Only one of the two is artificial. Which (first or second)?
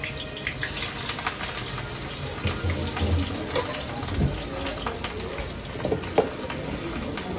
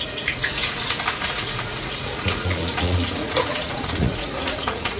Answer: second